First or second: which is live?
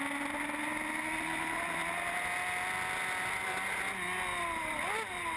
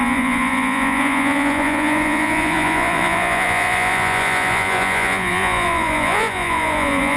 first